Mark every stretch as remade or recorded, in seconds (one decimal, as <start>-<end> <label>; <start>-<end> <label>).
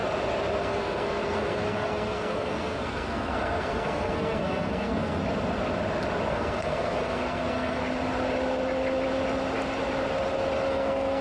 0.0-0.6 recorded; 0.6-5.2 remade; 5.2-6.3 recorded; 6.3-7.8 remade; 7.8-10.7 recorded; 10.7-11.2 remade